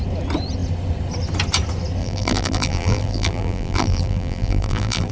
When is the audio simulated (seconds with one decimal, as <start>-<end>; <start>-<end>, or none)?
2.0-5.1